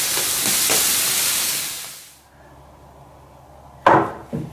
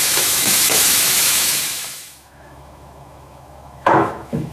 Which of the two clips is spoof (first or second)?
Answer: second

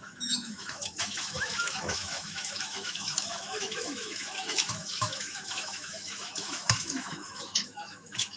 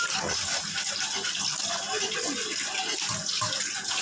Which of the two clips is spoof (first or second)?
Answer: first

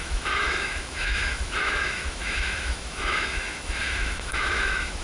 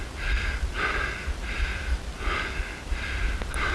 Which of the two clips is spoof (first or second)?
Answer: first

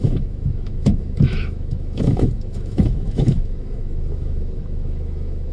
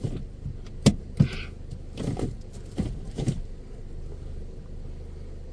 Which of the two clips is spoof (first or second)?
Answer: first